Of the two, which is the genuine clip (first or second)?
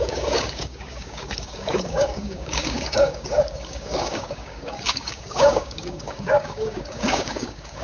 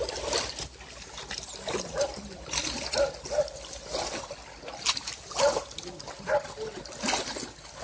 second